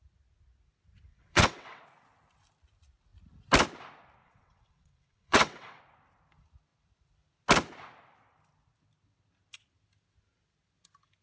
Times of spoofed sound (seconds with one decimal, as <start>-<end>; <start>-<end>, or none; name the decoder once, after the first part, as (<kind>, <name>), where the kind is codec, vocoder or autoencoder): 1.1-1.8 (vocoder, WaveNeXt); 4.2-5.8